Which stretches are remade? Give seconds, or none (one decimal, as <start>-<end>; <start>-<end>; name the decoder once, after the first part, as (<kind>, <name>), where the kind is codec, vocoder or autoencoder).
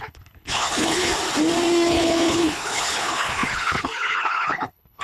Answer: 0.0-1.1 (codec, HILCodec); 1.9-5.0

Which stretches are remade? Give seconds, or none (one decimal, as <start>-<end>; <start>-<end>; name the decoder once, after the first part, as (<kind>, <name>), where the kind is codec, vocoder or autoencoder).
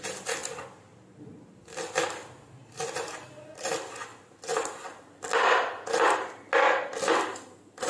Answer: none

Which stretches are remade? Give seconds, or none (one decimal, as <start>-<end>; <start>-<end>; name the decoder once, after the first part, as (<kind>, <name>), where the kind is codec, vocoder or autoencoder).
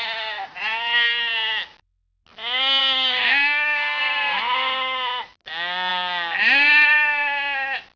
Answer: 2.8-4.0 (codec, DAC)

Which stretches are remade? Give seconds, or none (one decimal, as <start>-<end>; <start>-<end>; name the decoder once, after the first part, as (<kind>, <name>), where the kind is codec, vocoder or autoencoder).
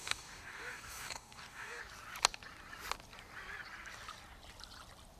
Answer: 0.0-1.8 (codec, DAC)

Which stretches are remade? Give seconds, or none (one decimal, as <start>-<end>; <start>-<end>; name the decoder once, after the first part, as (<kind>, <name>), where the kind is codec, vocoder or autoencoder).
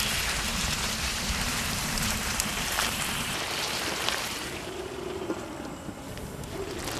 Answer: 0.5-4.7 (vocoder, BigVGAN v2)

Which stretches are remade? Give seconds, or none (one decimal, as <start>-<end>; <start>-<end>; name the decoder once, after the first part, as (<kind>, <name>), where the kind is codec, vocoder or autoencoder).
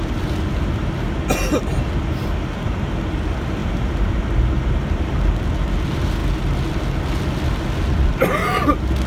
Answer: 3.6-4.2 (vocoder, BigVGAN v2)